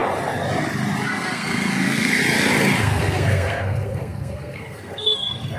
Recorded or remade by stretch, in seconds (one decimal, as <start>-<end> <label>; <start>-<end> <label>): 0.0-1.1 recorded; 1.1-2.2 remade; 2.2-2.8 recorded; 2.8-5.6 remade